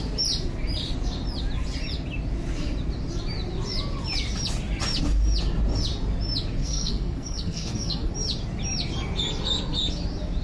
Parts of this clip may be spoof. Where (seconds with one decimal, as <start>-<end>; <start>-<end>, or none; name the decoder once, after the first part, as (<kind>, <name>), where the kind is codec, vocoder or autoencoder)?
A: 6.6-8.1 (codec, SNAC)